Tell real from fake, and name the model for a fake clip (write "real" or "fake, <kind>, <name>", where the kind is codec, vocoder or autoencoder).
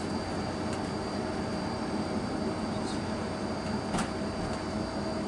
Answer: real